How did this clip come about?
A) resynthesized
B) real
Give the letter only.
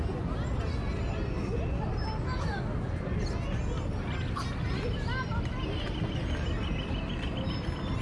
B